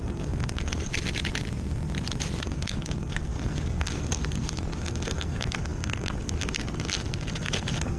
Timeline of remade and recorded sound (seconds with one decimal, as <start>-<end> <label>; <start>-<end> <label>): 0.0-0.9 remade; 0.9-2.4 recorded; 2.4-8.0 remade